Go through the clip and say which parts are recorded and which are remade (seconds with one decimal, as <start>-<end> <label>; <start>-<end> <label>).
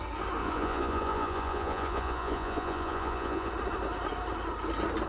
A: 0.0-0.4 recorded; 0.4-3.5 remade; 3.5-5.1 recorded